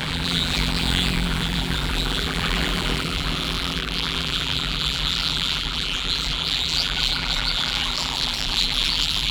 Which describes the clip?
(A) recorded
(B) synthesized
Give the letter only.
B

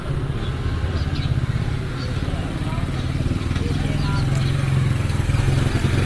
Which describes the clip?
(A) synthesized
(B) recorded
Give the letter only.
B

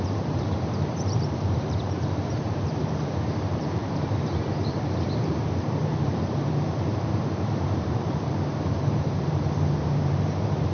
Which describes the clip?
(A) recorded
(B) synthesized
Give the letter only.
B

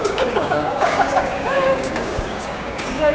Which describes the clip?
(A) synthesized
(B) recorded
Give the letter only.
A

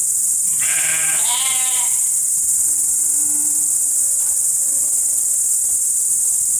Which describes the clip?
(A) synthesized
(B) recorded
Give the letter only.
B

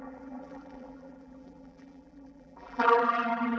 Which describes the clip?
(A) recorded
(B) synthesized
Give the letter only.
B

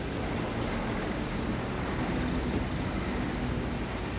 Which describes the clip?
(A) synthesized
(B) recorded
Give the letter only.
B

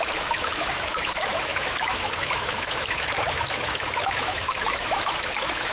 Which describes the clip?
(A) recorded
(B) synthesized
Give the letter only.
B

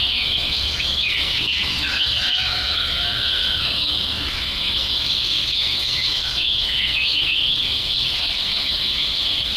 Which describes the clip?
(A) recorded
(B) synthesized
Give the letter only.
B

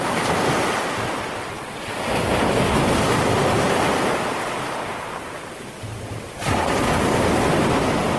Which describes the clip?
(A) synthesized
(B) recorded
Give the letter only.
B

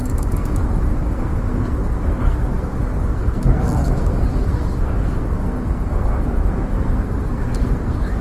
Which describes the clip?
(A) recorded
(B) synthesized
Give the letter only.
B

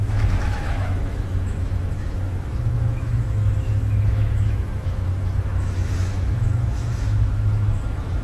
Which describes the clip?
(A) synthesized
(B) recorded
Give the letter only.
A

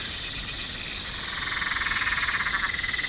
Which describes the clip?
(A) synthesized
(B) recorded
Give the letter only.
B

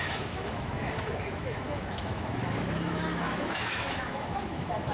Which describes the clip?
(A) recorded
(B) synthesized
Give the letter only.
B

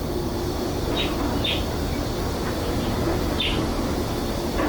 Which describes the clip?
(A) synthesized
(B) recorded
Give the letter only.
B